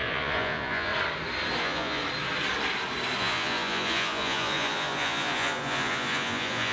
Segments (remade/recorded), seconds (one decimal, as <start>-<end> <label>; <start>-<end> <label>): 0.0-0.9 remade; 0.9-1.6 recorded; 1.6-2.0 remade; 2.0-3.2 recorded; 3.2-6.7 remade